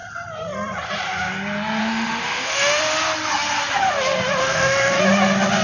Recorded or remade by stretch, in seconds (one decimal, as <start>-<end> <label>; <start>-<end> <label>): 0.0-1.8 recorded; 1.8-2.8 remade; 2.8-4.4 recorded; 4.4-5.0 remade; 5.0-5.6 recorded